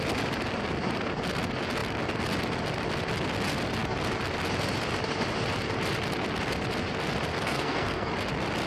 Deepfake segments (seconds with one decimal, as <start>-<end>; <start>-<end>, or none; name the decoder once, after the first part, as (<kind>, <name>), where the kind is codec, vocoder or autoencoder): 7.3-8.1 (codec, SNAC)